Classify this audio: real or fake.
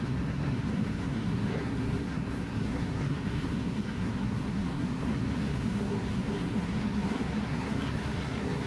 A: fake